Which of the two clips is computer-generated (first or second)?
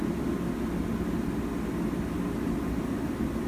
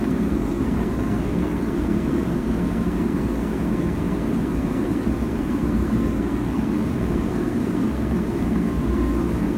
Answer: second